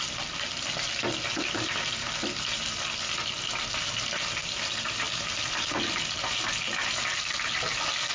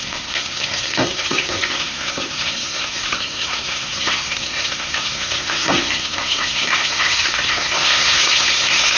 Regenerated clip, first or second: second